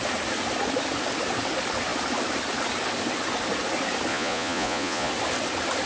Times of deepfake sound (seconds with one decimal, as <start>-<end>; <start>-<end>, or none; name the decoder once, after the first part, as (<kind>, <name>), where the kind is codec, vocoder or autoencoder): 4.1-5.1 (vocoder, Vocos)

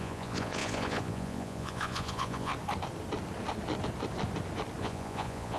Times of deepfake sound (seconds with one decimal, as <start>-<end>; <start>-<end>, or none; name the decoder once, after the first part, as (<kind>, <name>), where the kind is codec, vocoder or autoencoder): 0.0-2.5 (vocoder, Vocos); 4.8-5.6

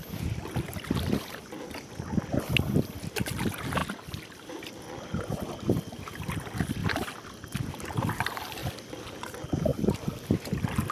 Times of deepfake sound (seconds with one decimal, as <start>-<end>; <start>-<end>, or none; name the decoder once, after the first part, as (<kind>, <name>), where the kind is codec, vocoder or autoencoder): 3.8-4.6 (vocoder, BigVGAN v2); 6.8-8.1

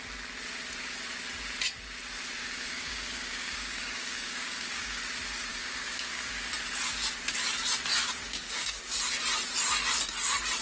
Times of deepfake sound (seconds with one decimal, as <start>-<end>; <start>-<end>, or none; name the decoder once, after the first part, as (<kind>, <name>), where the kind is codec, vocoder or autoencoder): 2.4-5.0 (codec, DAC); 5.5-6.5; 8.2-8.8